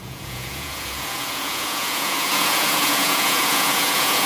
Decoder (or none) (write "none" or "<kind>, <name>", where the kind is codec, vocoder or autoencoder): vocoder, Vocos